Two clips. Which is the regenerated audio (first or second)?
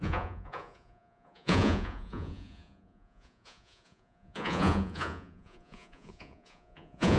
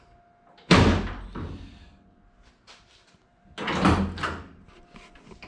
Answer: first